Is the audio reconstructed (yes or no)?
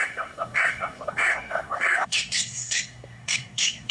yes